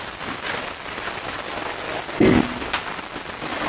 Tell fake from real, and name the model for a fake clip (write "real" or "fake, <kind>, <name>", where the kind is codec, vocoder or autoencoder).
real